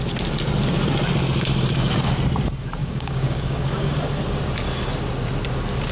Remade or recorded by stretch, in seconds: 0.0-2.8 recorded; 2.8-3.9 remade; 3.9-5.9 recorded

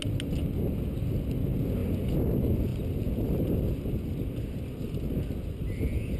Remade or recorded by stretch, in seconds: 0.0-6.2 recorded

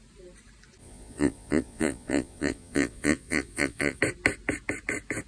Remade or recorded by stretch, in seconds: 0.0-0.8 recorded; 0.8-4.0 remade; 4.0-5.3 recorded

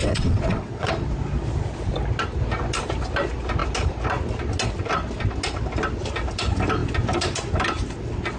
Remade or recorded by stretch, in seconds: 0.0-0.9 remade; 0.9-8.4 recorded

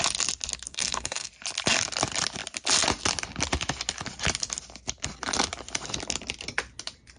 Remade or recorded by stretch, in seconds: 0.0-0.7 recorded; 0.7-1.3 remade; 1.3-7.2 recorded

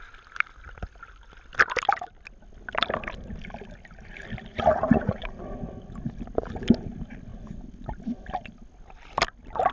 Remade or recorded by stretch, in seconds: 0.0-4.5 recorded; 4.5-5.4 remade; 5.4-9.7 recorded

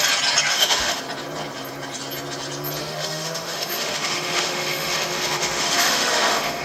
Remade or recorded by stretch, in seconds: 0.0-0.5 recorded; 0.5-1.0 remade; 1.0-2.8 recorded; 2.8-6.6 remade

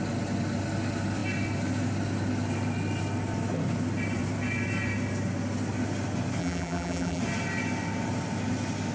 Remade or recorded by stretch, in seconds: 0.0-6.4 recorded; 6.4-7.2 remade; 7.2-8.9 recorded